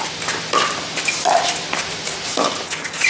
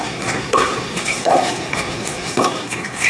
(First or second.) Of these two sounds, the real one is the first